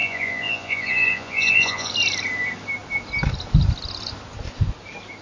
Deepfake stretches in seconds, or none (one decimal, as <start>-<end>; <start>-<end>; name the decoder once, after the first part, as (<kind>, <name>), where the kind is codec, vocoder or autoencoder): 0.0-1.9 (vocoder, Vocos)